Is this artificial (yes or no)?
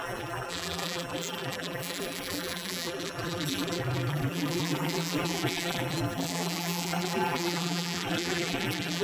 yes